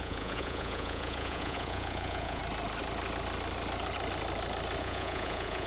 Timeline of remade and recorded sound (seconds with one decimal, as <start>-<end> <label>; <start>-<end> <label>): 0.0-2.4 remade; 2.4-4.8 recorded; 4.8-5.7 remade